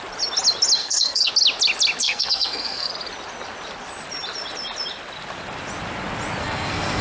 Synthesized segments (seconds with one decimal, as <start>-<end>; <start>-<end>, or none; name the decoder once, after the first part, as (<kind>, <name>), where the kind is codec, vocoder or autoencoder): 0.8-1.3 (codec, SNAC); 2.0-2.9; 6.4-7.0